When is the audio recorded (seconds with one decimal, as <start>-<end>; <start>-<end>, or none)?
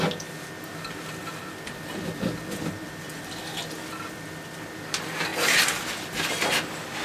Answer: 0.0-7.0